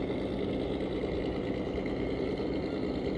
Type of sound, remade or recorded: recorded